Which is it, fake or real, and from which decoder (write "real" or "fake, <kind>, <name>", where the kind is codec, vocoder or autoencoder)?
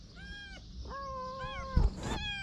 real